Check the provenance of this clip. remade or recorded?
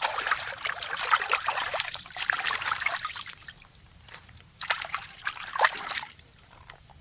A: remade